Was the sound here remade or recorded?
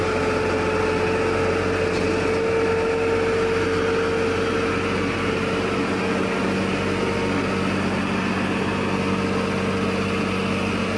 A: recorded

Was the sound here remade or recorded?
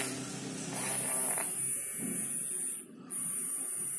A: recorded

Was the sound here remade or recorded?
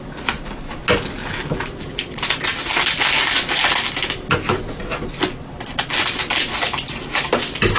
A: recorded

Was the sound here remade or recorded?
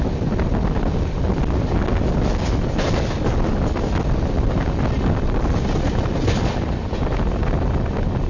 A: recorded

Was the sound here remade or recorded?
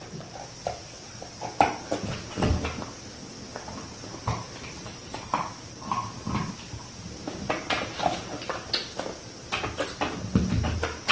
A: recorded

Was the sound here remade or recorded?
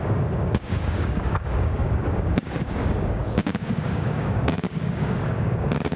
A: remade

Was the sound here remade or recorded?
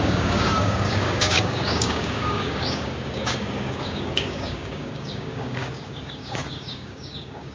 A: remade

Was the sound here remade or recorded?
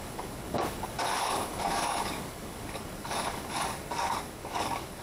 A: remade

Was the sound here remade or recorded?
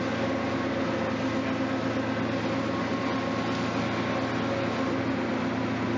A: recorded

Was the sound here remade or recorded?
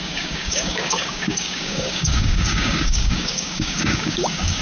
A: remade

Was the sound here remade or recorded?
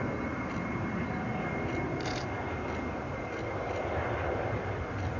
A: recorded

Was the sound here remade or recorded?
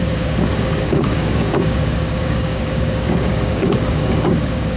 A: remade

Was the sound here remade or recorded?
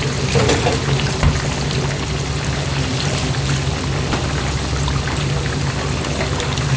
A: recorded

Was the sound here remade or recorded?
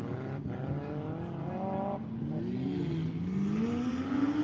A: recorded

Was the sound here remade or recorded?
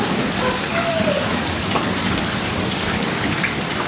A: remade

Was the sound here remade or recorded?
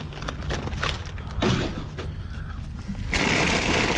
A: recorded